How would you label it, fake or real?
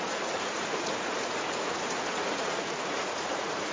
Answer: fake